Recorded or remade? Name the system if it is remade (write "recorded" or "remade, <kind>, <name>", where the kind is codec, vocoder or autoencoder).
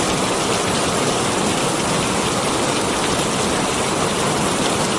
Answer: remade, vocoder, BigVGAN v2